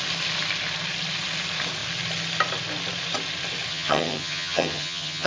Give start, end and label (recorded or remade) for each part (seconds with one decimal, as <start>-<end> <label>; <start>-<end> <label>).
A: 0.0-3.7 recorded; 3.7-5.3 remade